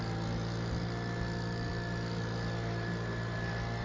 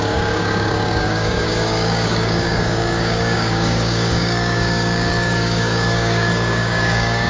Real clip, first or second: first